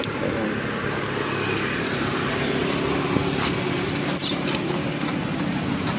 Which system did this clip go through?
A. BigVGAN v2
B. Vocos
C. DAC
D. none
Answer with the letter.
D